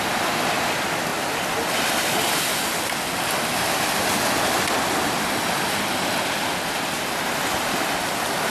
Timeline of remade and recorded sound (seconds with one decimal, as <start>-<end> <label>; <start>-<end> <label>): 0.0-8.5 recorded